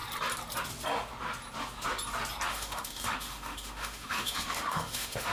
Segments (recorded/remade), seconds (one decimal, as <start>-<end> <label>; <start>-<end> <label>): 0.0-2.5 recorded; 2.5-5.3 remade